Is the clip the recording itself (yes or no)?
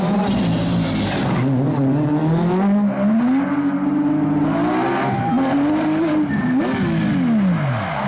yes